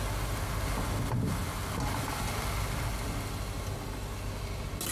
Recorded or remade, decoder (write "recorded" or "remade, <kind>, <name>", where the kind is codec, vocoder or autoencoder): recorded